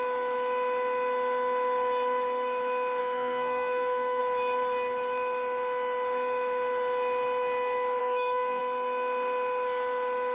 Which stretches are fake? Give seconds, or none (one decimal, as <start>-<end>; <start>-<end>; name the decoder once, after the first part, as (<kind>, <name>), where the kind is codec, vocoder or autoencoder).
3.0-4.2 (codec, SNAC); 8.0-8.6

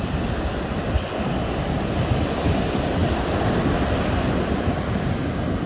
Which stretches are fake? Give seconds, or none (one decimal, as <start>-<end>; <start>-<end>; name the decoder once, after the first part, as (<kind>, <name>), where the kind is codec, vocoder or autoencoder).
none

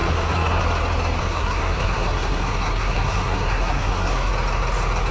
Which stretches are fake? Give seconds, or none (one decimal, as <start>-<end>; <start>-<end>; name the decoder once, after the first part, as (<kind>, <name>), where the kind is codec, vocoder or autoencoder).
0.0-0.6 (codec, SNAC); 1.2-4.3

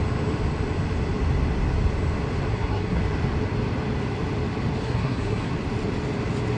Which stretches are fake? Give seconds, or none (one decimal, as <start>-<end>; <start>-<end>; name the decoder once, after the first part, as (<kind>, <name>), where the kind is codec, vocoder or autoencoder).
2.5-3.0 (codec, SNAC); 4.8-5.5

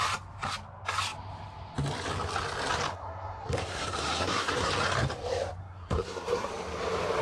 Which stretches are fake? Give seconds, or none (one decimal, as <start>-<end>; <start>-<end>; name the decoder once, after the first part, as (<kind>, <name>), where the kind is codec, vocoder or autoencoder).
2.9-4.7 (codec, SNAC); 5.6-6.5

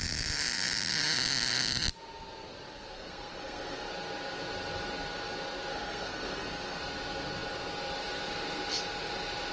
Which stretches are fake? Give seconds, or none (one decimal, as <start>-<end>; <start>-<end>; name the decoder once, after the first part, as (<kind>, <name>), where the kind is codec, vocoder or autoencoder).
2.7-3.9 (codec, SNAC); 5.7-6.8

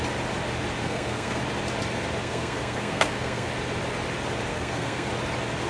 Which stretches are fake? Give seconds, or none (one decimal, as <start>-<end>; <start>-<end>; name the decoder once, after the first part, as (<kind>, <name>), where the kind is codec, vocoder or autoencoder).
0.8-1.4 (codec, SNAC); 2.2-3.5; 4.5-5.1

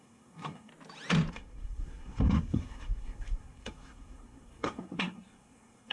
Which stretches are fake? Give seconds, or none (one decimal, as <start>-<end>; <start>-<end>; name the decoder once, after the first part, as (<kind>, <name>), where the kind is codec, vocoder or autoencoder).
0.0-0.7 (codec, SNAC); 1.3-5.9